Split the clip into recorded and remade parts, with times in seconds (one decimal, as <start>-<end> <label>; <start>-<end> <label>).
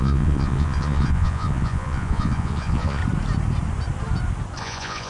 0.0-3.0 remade; 3.0-4.6 recorded; 4.6-5.1 remade